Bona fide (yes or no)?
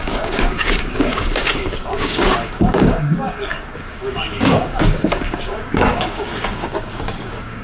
no